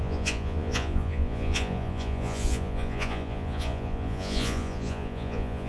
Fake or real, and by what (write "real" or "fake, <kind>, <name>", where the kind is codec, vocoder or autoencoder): fake, vocoder, Vocos